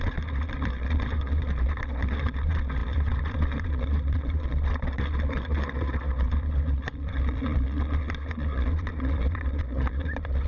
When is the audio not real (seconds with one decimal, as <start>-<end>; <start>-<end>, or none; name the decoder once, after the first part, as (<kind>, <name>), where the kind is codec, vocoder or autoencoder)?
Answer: 0.0-10.5 (vocoder, Vocos)